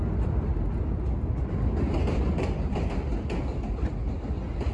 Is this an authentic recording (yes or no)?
yes